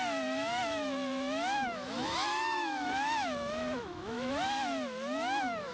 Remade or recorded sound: remade